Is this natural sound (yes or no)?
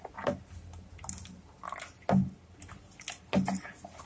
yes